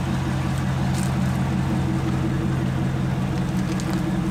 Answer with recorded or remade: recorded